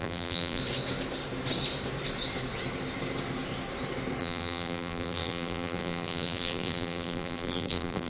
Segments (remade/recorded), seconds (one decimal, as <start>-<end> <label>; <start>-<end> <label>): 0.0-0.6 remade; 0.6-4.2 recorded; 4.2-8.1 remade